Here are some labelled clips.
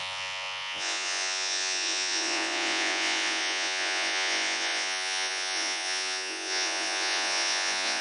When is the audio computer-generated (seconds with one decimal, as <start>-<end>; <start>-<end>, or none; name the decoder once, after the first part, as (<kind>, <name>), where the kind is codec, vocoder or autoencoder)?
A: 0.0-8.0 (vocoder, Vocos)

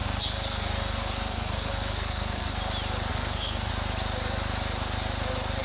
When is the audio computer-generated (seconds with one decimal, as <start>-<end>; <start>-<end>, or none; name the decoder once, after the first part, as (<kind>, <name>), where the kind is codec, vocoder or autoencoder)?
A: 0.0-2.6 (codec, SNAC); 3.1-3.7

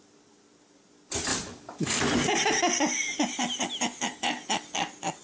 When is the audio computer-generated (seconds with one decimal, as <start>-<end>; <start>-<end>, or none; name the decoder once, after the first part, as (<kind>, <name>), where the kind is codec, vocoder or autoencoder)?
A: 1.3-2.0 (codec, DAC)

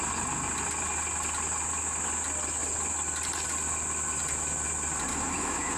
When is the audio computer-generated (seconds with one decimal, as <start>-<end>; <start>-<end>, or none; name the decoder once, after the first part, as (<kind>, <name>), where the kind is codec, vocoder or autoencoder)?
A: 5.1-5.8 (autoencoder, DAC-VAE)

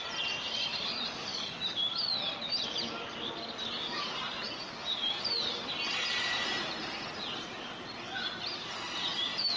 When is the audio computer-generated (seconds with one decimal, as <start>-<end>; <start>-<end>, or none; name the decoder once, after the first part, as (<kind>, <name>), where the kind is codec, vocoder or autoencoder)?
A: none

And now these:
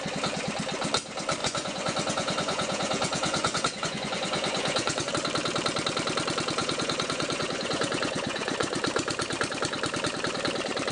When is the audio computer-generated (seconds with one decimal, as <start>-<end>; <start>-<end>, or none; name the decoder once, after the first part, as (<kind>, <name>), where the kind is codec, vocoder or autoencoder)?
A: 1.4-5.1 (vocoder, Vocos); 6.6-8.8

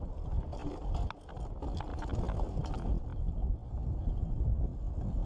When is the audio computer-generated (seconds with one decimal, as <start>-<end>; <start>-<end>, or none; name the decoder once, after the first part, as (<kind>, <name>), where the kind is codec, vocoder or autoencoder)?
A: none

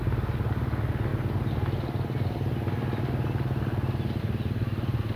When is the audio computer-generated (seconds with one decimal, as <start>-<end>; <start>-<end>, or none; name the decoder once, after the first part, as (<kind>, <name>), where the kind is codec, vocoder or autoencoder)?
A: none